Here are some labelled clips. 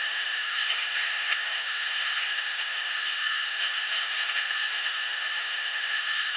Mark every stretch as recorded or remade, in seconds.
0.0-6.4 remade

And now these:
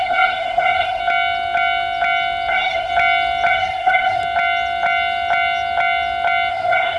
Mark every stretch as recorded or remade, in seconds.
0.0-1.0 remade; 1.0-2.5 recorded; 2.5-2.9 remade; 2.9-3.5 recorded; 3.5-4.2 remade; 4.2-6.5 recorded; 6.5-7.0 remade